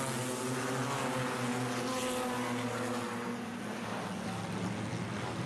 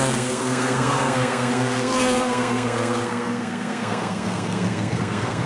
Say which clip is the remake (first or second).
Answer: second